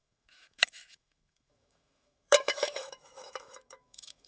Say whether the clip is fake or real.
fake